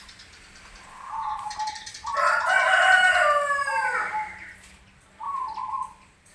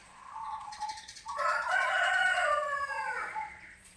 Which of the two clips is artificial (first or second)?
second